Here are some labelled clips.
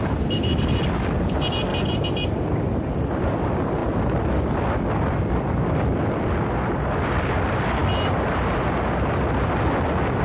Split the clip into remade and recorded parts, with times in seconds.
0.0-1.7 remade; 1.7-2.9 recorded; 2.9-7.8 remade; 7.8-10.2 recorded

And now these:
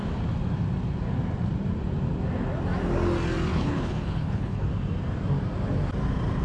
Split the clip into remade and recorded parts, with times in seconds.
0.0-3.5 recorded; 3.5-4.6 remade; 4.6-6.4 recorded

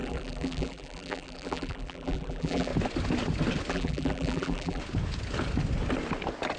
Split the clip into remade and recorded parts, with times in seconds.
0.0-2.7 remade; 2.7-3.7 recorded; 3.7-4.8 remade; 4.8-6.6 recorded

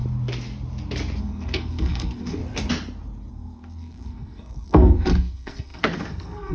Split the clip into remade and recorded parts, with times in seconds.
0.0-1.2 recorded; 1.2-2.4 remade; 2.4-3.3 recorded; 3.3-6.5 remade